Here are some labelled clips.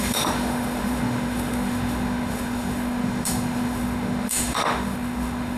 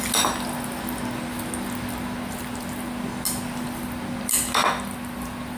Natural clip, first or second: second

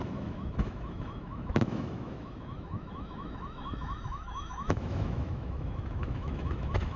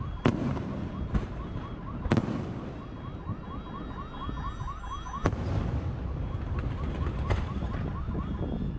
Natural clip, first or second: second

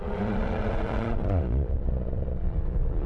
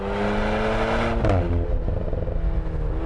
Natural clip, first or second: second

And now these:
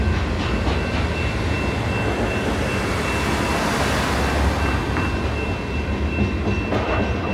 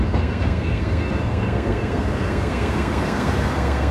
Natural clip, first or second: first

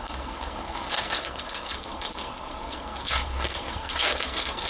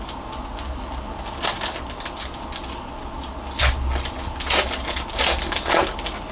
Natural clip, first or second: second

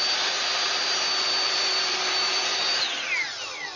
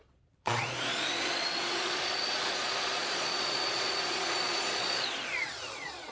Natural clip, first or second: first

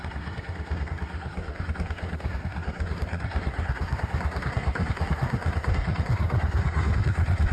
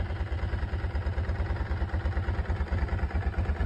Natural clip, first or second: second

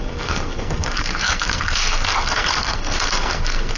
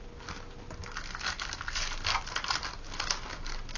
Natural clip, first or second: second